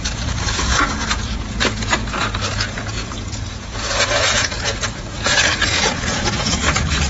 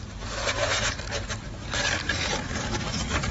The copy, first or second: first